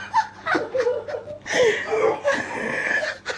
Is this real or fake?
real